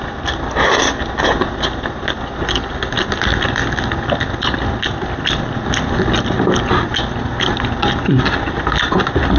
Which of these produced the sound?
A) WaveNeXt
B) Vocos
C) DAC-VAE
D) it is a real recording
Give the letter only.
D